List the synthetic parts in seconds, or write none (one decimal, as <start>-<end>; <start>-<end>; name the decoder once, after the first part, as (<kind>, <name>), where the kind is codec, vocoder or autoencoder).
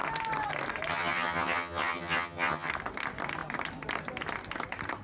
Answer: 0.9-2.7 (vocoder, HiFi-GAN)